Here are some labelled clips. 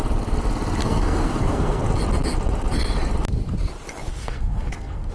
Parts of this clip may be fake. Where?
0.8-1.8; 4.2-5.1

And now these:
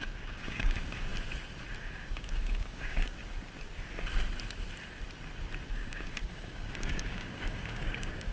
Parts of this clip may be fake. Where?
0.0-1.1; 1.8-3.2; 5.7-8.3

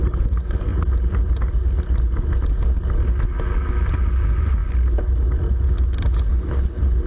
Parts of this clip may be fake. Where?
6.3-7.1